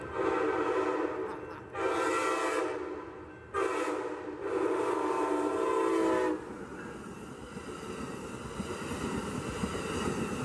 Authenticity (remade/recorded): recorded